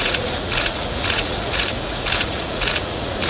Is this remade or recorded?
remade